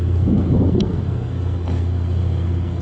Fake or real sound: fake